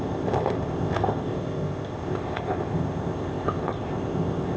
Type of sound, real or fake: fake